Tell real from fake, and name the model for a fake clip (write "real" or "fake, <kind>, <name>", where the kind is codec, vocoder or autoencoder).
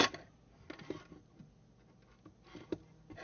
real